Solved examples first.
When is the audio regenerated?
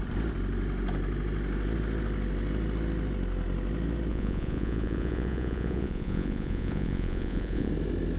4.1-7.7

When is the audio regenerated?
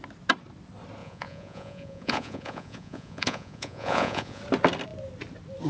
1.0-4.4